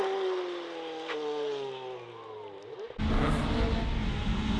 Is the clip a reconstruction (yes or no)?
no